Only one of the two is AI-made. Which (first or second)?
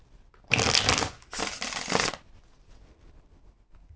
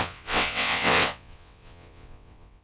second